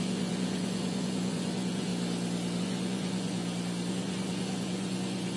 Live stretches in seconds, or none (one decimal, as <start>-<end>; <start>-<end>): 1.9-2.6; 3.4-3.9